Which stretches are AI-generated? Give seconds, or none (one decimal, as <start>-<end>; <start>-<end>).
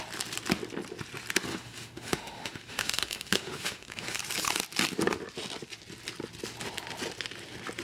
1.5-4.2